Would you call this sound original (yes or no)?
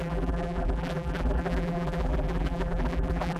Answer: no